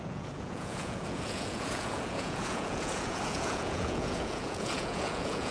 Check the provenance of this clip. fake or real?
fake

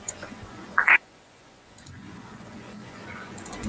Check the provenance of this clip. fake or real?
fake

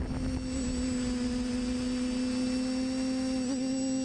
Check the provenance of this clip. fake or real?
real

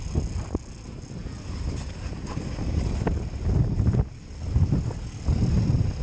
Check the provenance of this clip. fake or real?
real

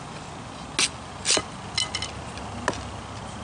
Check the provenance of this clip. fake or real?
real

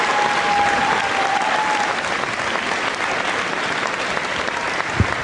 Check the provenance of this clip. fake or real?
real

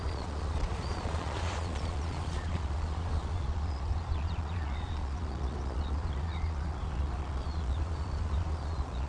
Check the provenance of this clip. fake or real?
fake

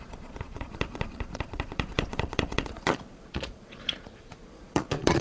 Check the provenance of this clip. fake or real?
fake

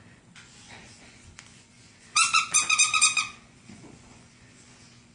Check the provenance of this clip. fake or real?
fake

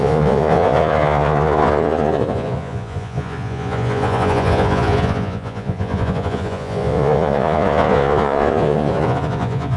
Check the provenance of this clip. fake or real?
fake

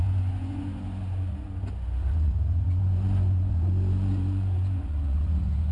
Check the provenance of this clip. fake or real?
fake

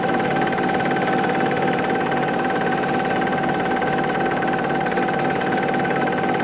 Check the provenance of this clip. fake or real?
real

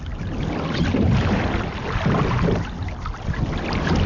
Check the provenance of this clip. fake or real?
real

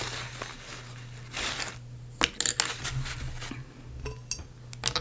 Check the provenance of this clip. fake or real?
real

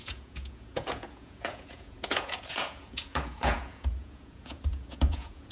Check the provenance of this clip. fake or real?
fake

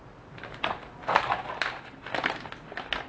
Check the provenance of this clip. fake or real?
real